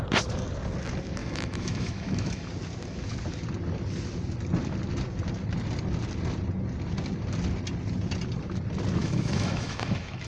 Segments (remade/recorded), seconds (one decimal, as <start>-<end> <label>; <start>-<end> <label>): 0.0-1.2 recorded; 1.2-2.5 remade; 2.5-9.0 recorded; 9.0-10.3 remade